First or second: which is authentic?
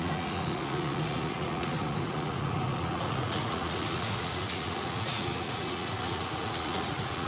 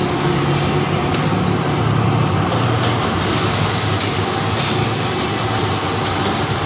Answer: second